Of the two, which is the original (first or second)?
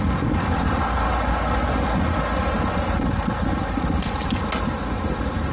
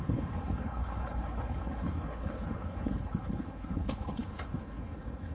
first